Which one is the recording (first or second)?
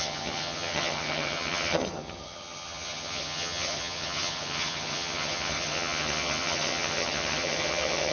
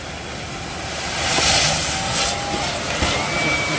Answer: second